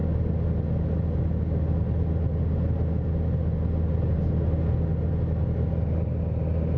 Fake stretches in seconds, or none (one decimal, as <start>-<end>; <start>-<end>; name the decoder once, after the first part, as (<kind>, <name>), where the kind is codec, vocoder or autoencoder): none